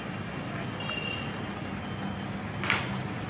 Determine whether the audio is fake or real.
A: real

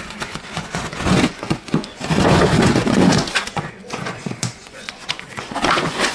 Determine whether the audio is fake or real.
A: fake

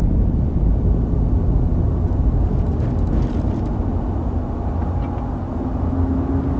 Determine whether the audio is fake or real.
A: real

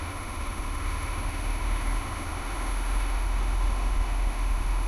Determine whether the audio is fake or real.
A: fake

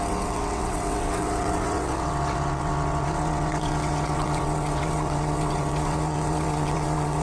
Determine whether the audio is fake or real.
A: fake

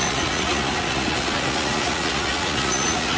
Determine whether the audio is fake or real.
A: fake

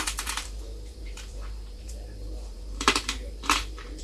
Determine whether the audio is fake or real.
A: fake